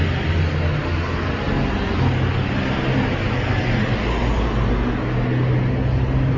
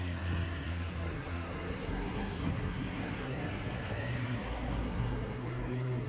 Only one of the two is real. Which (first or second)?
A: first